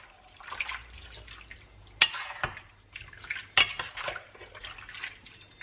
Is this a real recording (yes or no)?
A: yes